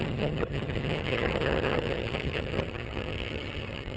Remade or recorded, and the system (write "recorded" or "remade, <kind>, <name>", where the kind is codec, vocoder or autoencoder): remade, vocoder, HiFi-GAN